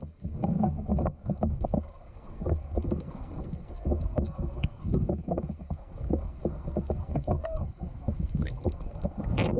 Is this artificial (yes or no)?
yes